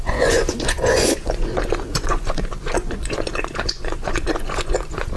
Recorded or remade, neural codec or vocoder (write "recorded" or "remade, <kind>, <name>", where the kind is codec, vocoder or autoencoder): remade, vocoder, Vocos